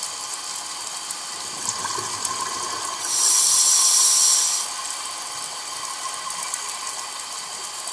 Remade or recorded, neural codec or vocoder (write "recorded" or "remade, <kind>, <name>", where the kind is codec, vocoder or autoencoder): recorded